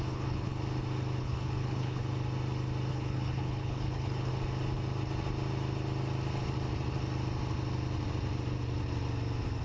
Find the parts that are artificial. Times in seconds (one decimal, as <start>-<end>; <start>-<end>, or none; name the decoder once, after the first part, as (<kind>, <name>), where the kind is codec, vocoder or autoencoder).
0.0-0.5 (codec, HILCodec); 1.2-2.0; 2.9-4.3